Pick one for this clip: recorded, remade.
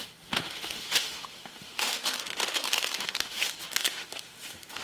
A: remade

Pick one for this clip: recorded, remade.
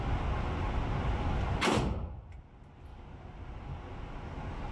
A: recorded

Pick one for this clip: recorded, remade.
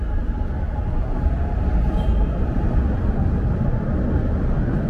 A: recorded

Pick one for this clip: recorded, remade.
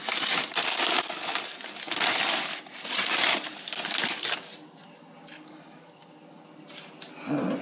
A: recorded